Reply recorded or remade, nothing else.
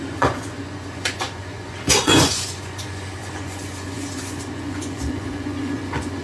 remade